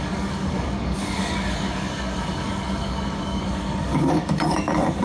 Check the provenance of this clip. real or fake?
fake